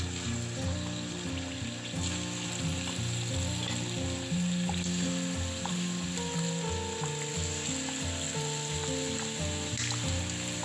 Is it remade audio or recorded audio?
recorded